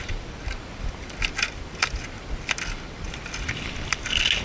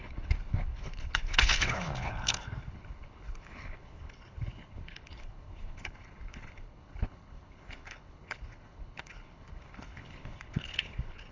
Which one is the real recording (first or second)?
first